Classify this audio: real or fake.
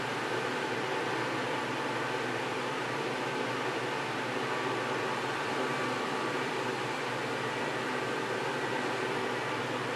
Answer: fake